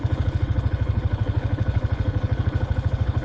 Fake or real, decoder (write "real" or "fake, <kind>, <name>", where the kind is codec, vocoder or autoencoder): fake, codec, HILCodec